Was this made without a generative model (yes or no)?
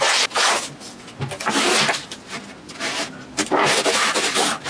yes